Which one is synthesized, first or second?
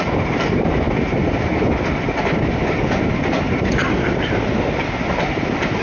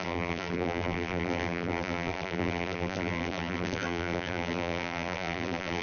second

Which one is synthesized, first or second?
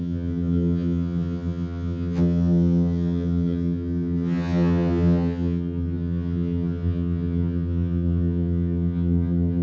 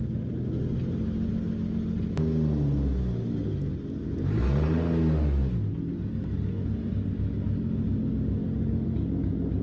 first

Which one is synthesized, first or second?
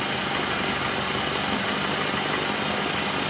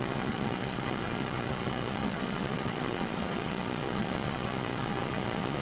second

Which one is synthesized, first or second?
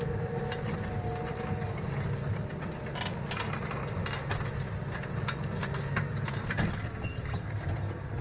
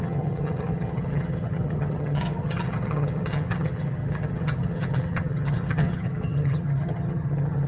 second